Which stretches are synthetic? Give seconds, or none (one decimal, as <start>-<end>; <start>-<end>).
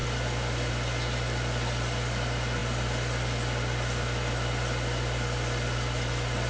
none